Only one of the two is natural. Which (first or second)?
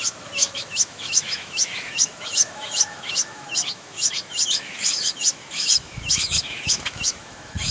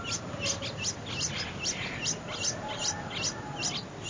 second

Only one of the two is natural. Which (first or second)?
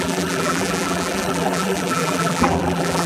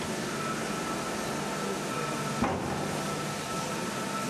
second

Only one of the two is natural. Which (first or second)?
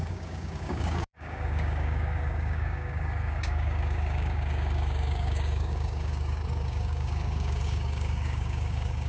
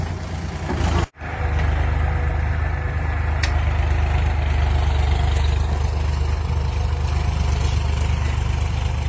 second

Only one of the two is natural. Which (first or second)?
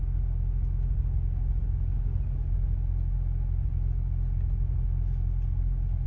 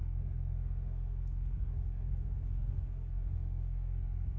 first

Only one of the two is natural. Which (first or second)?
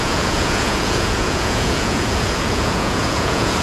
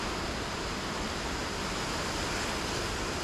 second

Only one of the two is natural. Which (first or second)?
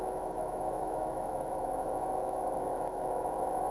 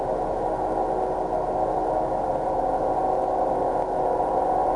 second